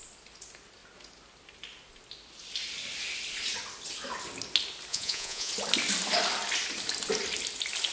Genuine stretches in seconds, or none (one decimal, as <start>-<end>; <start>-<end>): 0.0-4.9; 5.5-7.9

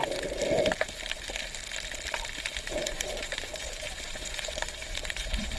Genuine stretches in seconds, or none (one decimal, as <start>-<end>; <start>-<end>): 0.0-2.7

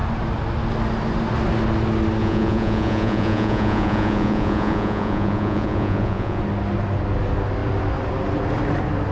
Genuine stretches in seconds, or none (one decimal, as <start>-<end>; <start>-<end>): 0.0-2.2; 6.4-9.1

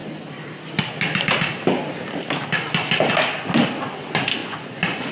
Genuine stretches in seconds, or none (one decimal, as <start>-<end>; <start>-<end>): 0.0-4.4

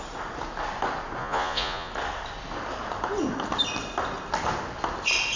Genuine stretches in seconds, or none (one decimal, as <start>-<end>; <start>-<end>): 0.0-1.2; 1.9-5.4

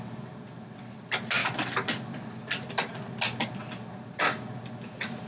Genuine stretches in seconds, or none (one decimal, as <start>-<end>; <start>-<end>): 0.0-5.3